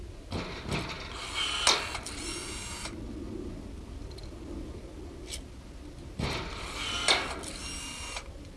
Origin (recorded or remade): recorded